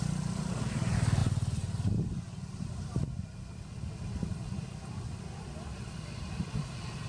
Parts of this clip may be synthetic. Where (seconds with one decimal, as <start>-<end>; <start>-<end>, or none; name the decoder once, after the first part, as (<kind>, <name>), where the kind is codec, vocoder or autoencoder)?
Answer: none